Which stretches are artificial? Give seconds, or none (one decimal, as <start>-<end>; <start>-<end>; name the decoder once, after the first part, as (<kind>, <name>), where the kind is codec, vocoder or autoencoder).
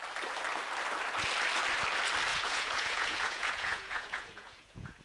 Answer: 2.3-5.0 (vocoder, Vocos)